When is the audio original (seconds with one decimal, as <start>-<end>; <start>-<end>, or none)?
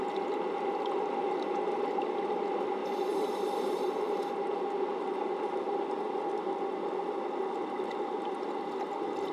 0.0-2.8; 4.3-9.3